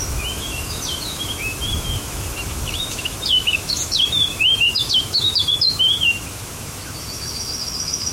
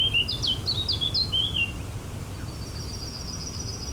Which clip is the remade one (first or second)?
first